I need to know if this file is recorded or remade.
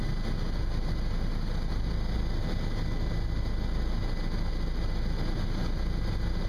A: recorded